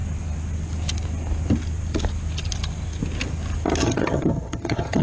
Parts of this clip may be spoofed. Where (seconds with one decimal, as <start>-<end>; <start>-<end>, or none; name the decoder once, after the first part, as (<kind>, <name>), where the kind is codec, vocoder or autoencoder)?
3.8-5.0 (vocoder, HiFi-GAN)